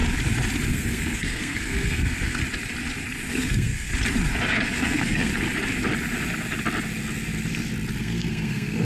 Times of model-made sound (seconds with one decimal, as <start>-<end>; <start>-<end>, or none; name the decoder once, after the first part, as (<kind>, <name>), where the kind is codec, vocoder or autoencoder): 0.7-2.4 (codec, SNAC); 3.3-3.9; 4.6-5.3; 8.0-8.8